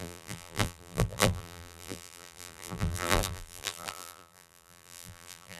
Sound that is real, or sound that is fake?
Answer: fake